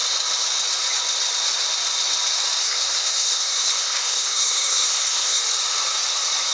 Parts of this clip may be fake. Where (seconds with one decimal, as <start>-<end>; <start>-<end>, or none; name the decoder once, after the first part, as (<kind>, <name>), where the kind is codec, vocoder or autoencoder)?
2.6-5.4 (codec, SNAC)